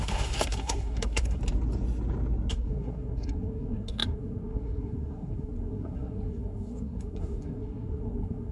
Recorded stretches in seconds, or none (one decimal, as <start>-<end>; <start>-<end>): 1.4-2.5